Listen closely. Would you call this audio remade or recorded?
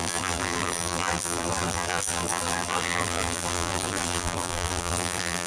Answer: remade